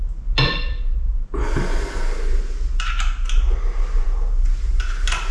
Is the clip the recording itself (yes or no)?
yes